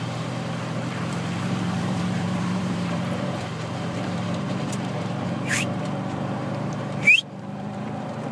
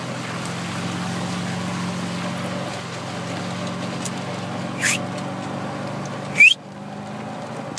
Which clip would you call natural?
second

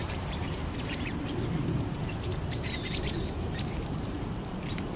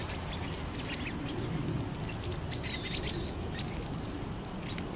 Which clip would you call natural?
second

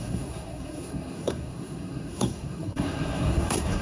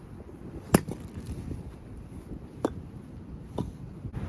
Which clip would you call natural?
second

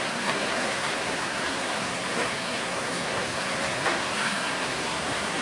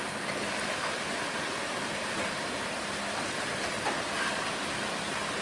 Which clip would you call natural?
second